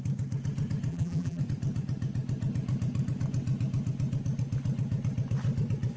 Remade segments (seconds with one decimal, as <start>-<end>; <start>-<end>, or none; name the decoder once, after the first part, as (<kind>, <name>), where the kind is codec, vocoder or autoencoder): 0.9-1.4 (vocoder, BigVGAN v2)